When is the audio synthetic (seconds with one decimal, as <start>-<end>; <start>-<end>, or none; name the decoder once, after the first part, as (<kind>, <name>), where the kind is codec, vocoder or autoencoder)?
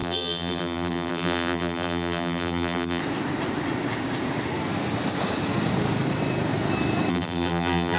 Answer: 0.0-3.0 (vocoder, BigVGAN v2); 7.1-8.0